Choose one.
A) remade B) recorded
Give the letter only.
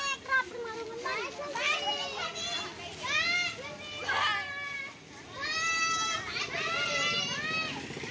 B